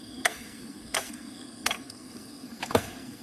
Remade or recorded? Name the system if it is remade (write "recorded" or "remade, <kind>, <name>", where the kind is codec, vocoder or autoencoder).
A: remade, codec, SNAC